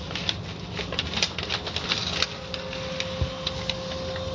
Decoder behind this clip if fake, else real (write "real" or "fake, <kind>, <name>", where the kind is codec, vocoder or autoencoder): real